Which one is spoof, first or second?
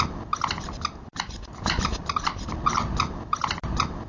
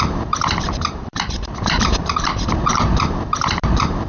second